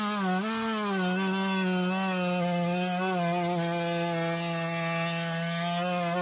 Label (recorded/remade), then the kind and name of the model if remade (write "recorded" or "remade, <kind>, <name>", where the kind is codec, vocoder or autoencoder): recorded